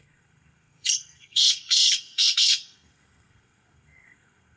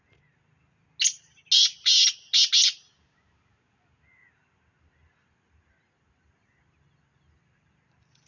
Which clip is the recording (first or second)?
second